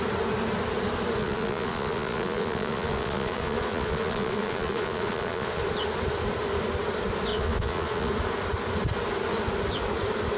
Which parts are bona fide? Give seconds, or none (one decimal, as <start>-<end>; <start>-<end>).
0.0-1.2; 5.6-7.3; 8.1-10.4